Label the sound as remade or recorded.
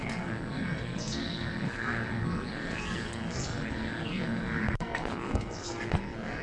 remade